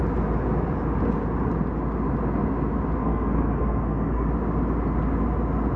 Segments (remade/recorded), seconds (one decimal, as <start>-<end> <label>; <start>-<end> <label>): 0.0-3.0 recorded; 3.0-4.3 remade; 4.3-5.8 recorded